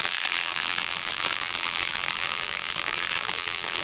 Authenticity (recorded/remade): remade